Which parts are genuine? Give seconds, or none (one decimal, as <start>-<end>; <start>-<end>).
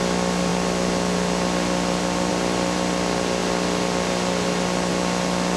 0.0-5.6